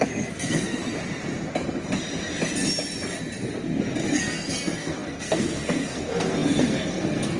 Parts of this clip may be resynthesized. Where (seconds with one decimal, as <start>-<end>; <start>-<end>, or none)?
0.0-0.8; 4.1-7.4